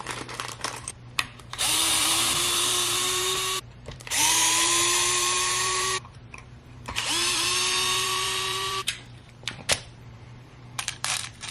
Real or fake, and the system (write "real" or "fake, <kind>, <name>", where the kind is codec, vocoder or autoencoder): fake, vocoder, BigVGAN v2